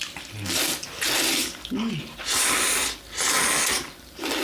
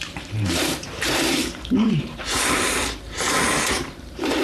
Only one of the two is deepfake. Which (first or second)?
second